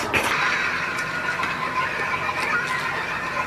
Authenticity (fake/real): real